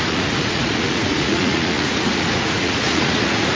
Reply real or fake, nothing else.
fake